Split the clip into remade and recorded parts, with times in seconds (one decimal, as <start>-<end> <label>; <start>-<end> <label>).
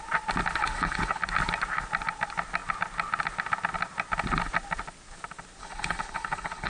0.0-0.6 recorded; 0.6-1.2 remade; 1.2-5.6 recorded; 5.6-6.7 remade